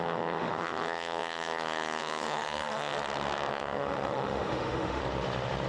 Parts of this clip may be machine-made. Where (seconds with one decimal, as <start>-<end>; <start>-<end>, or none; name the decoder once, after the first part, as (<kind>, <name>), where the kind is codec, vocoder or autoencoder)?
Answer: 0.0-2.9 (autoencoder, DAC-VAE); 3.5-5.0